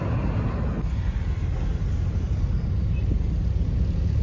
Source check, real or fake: real